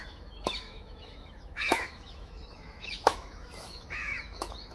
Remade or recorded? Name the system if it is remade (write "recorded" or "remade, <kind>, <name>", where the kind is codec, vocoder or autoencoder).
remade, autoencoder, DAC-VAE